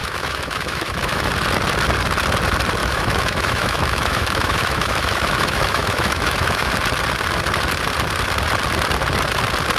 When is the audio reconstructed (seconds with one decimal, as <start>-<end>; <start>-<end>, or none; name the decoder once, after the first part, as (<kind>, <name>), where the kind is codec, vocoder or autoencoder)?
0.0-1.3 (autoencoder, DAC-VAE); 2.8-6.7